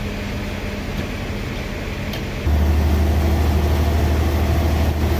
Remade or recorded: recorded